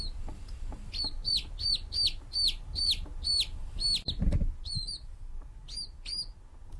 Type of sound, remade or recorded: recorded